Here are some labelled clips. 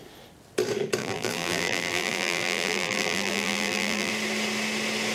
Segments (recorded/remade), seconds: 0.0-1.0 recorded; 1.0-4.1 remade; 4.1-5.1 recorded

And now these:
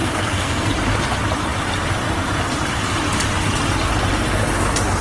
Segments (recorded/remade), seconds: 0.0-0.7 remade; 0.7-5.0 recorded

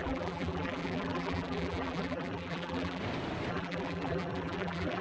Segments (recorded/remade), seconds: 0.0-3.0 remade; 3.0-3.5 recorded; 3.5-5.0 remade

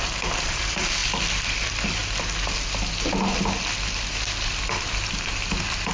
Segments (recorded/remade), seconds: 0.0-2.0 remade; 2.0-4.4 recorded; 4.4-5.9 remade

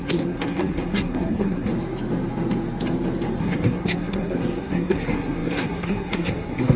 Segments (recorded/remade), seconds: 0.0-1.7 remade; 1.7-3.4 recorded; 3.4-6.8 remade

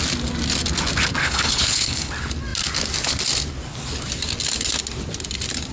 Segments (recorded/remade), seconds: 0.0-1.2 recorded; 1.2-2.1 remade; 2.1-5.7 recorded

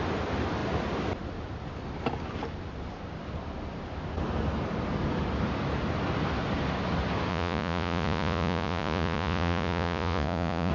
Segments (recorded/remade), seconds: 0.0-7.3 recorded; 7.3-10.7 remade